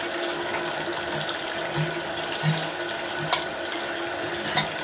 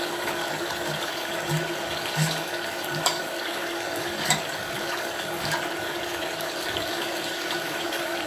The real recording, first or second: first